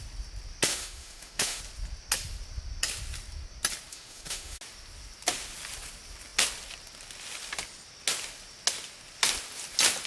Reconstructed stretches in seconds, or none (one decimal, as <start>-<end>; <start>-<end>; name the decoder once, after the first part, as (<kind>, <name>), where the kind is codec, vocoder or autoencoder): 0.7-1.6 (autoencoder, DAC-VAE); 3.9-4.6